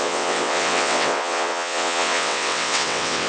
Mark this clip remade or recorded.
remade